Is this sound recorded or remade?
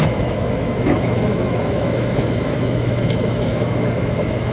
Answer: remade